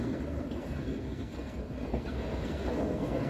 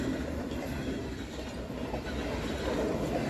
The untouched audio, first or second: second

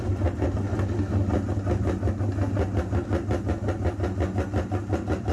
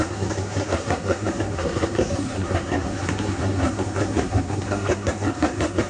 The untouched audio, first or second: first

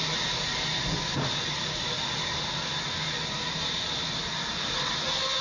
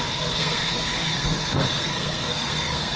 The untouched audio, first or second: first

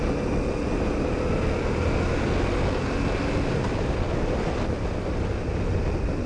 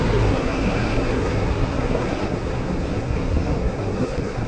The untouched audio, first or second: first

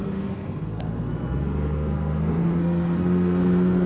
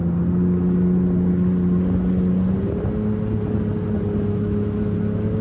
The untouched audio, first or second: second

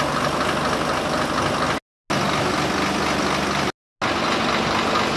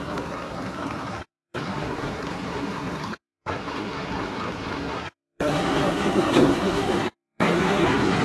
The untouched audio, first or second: first